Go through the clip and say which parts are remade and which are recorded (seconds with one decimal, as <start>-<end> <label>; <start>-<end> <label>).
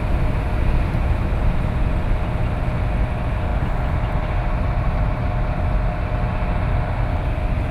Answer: 0.0-7.7 recorded